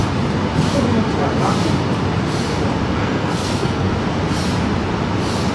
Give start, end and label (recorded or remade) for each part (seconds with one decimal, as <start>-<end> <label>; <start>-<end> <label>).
0.0-3.0 recorded; 3.0-3.9 remade; 3.9-5.5 recorded